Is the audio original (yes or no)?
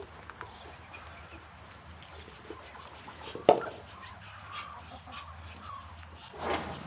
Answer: yes